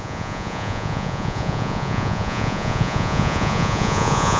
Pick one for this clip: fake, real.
fake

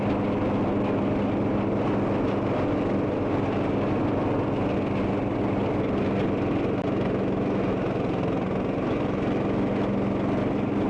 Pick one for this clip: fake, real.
real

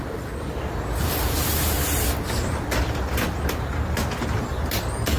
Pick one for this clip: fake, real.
real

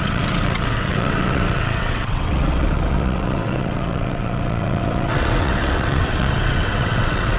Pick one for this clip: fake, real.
fake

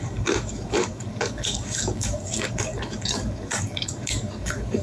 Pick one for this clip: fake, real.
fake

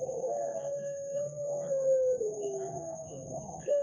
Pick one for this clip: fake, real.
fake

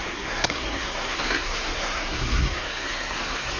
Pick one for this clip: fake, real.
fake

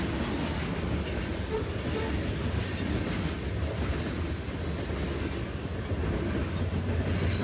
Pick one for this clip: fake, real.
real